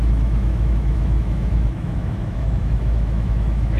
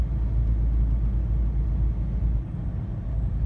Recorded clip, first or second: second